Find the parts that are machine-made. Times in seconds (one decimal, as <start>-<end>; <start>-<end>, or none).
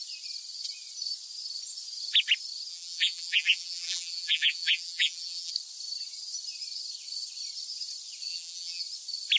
2.7-5.5; 8.3-8.8